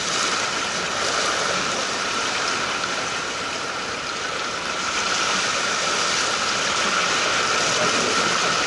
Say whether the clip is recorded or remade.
recorded